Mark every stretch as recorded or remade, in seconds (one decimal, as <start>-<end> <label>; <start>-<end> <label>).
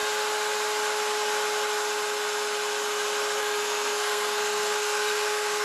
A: 0.0-3.4 recorded; 3.4-5.6 remade